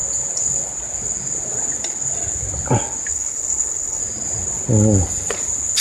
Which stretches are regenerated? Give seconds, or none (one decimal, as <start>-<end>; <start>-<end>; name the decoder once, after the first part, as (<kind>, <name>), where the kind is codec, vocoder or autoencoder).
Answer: 3.1-4.0 (codec, HILCodec)